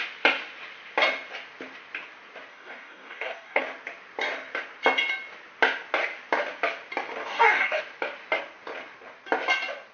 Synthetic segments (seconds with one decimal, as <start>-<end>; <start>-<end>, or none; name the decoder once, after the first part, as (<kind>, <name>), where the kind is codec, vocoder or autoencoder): 2.5-3.6 (codec, DAC); 7.2-7.8